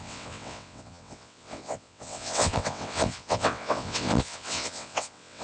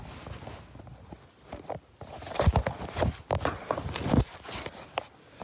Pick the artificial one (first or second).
first